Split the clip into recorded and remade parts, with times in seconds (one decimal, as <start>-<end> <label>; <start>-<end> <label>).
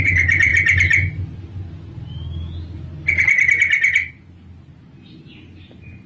0.0-6.1 recorded